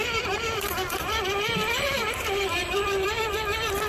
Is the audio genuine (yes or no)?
no